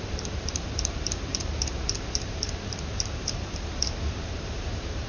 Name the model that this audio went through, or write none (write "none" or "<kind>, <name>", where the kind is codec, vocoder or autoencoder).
vocoder, BigVGAN v2